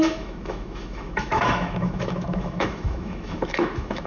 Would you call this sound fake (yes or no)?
yes